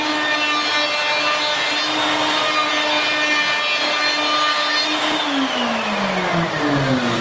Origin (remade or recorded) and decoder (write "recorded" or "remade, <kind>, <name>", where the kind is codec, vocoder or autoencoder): recorded